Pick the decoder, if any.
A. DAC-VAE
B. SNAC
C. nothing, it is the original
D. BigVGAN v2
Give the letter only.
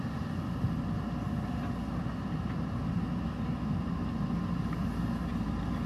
C